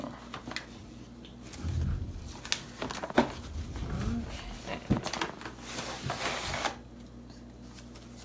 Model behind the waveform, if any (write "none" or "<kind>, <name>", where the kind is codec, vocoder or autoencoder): none